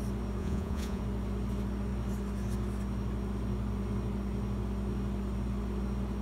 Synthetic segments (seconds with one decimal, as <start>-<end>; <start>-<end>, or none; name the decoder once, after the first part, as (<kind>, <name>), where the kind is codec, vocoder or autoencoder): 0.4-1.0 (vocoder, Vocos)